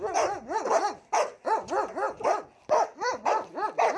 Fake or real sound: real